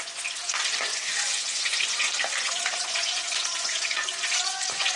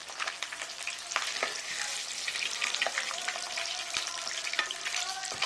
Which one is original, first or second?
second